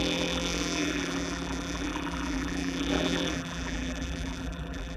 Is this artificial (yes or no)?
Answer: yes